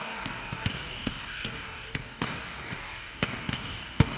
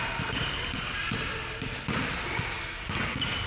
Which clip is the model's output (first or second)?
first